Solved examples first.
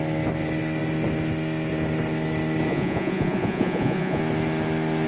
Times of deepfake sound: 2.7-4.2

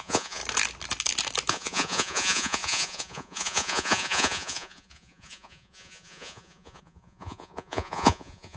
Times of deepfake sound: 0.0-0.4; 1.5-8.6

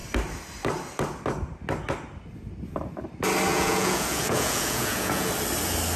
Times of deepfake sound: 3.5-5.3

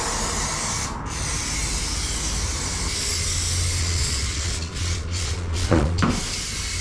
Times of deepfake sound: 3.8-6.0

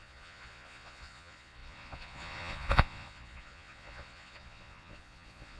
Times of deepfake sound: 0.0-5.6

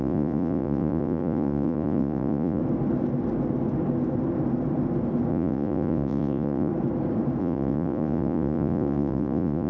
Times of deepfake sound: 0.0-2.6; 5.3-6.7; 7.4-9.7

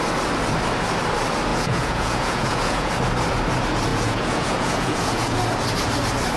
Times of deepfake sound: 1.5-2.9; 3.9-5.4